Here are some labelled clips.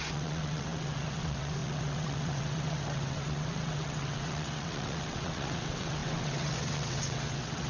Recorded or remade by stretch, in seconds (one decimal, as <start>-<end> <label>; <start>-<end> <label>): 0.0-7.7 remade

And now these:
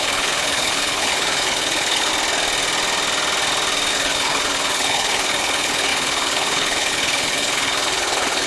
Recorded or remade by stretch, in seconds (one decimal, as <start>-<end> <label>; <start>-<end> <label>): 0.0-2.1 remade; 2.1-3.9 recorded; 3.9-8.5 remade

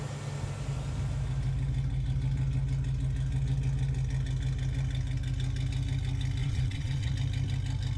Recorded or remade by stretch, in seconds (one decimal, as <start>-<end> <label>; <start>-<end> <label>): 0.0-6.4 recorded; 6.4-7.1 remade; 7.1-8.0 recorded

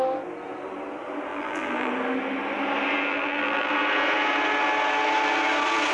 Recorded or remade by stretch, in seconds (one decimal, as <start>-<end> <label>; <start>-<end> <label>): 0.0-1.3 recorded; 1.3-1.9 remade; 1.9-3.1 recorded; 3.1-3.7 remade; 3.7-5.9 recorded

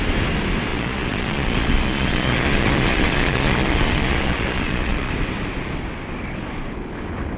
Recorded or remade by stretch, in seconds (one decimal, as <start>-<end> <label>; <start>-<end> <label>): 0.0-0.7 recorded; 0.7-5.1 remade; 5.1-7.4 recorded

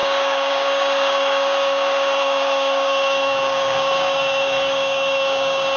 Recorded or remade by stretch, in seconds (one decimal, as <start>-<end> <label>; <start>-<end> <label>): 0.0-5.8 remade